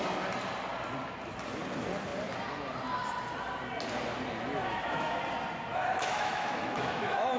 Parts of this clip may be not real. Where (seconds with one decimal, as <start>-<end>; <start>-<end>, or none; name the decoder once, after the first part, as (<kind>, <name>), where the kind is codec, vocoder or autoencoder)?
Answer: 4.6-5.2 (autoencoder, DAC-VAE); 5.7-7.4